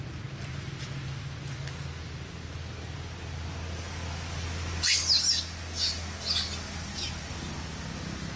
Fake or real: real